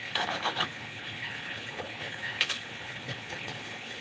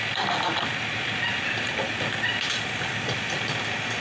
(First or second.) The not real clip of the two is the first